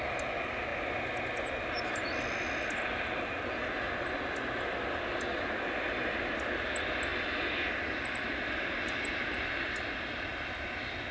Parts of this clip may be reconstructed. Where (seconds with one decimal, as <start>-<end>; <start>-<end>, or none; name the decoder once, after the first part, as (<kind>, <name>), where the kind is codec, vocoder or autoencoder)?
none